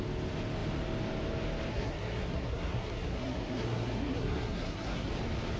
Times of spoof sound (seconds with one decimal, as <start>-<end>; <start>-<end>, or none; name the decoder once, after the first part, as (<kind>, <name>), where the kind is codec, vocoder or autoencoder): 1.7-5.1 (codec, SNAC)

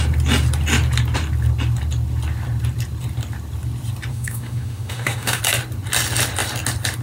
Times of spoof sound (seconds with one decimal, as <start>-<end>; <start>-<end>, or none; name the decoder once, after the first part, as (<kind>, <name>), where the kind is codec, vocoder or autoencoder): 4.1-5.4 (autoencoder, DAC-VAE)

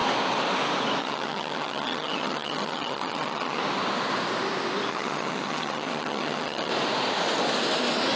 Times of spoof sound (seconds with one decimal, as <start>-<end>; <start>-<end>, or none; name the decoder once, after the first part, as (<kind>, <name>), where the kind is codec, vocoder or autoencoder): 1.0-3.6 (vocoder, HiFi-GAN); 4.9-6.7